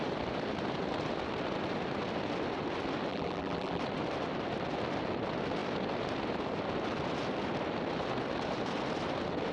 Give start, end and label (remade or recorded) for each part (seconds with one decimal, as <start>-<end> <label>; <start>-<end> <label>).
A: 0.0-3.1 recorded; 3.1-3.8 remade; 3.8-9.5 recorded